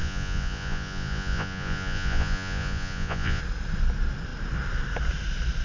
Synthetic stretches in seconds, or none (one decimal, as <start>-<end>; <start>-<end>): 0.0-3.4